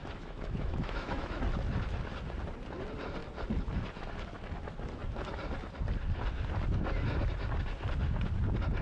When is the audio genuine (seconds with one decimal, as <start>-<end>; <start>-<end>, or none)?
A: 1.4-8.8